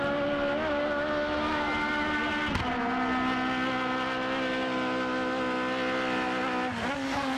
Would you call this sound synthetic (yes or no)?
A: no